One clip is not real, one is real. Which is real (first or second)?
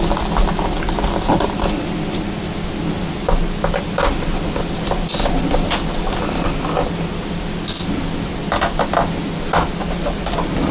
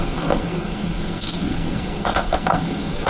first